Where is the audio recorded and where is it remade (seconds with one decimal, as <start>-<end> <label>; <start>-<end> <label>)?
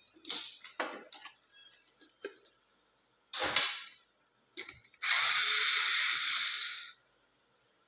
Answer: 0.0-7.9 recorded